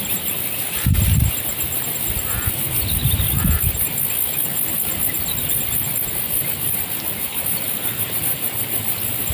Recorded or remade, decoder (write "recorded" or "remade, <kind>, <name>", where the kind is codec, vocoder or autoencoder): recorded